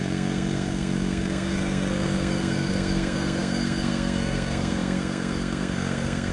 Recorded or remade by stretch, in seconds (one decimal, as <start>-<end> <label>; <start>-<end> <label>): 0.0-6.3 remade